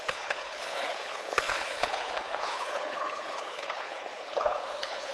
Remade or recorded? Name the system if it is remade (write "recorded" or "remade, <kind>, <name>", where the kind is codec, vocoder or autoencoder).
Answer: remade, codec, HILCodec